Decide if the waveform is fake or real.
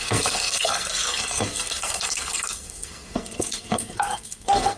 fake